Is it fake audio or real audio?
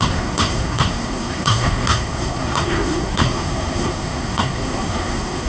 fake